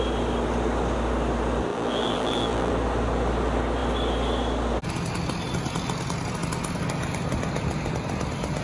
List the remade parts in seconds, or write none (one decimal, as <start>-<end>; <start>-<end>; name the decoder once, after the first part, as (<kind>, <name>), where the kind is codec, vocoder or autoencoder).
1.7-2.7 (vocoder, BigVGAN v2)